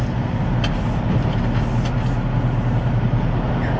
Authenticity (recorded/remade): recorded